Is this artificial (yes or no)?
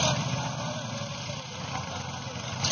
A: no